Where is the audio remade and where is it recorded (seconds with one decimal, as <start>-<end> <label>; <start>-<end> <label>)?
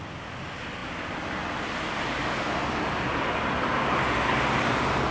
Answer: 0.0-5.1 recorded